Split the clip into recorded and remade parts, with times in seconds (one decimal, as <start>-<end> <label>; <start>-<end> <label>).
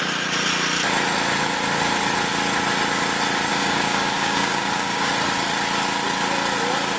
0.0-3.5 recorded; 3.5-5.1 remade; 5.1-7.0 recorded